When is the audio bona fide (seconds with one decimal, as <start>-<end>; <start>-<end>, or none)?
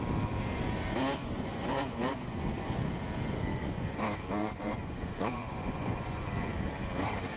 0.0-1.2; 2.9-3.5; 4.0-4.4; 6.5-7.4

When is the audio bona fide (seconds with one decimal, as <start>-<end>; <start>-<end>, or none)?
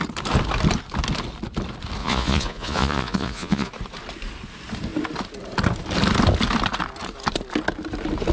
0.0-2.0; 3.7-8.3